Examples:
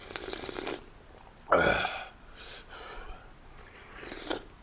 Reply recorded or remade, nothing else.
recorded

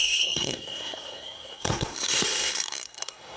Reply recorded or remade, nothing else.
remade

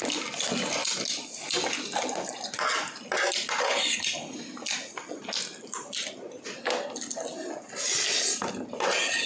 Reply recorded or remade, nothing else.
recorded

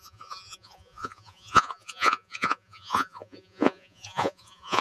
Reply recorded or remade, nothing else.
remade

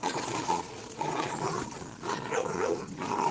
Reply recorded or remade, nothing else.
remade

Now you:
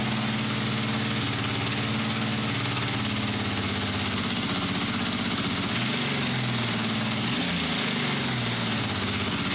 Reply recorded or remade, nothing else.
recorded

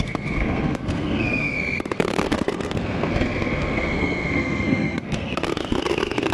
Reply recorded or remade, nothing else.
remade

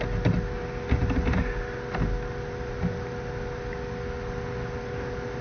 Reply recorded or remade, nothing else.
recorded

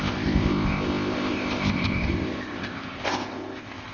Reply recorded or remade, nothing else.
remade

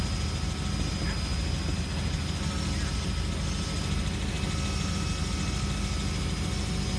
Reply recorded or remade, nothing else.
recorded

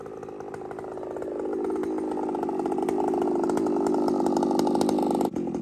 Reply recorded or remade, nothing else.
recorded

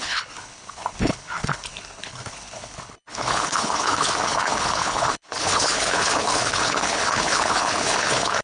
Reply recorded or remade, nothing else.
remade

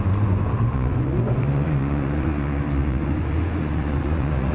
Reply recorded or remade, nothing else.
remade